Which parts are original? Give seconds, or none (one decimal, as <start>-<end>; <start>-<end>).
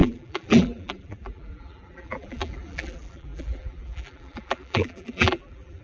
none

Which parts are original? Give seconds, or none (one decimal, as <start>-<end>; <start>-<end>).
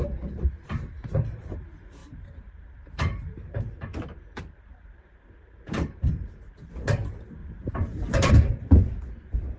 0.0-2.0; 6.7-7.4; 8.3-9.6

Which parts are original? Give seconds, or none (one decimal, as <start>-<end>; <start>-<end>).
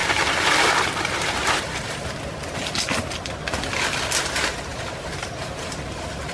1.6-4.7; 5.6-6.3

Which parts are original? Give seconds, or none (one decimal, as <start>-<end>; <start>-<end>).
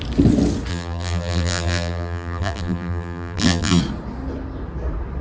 0.0-0.7; 3.8-5.2